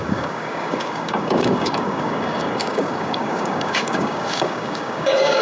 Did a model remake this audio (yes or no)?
yes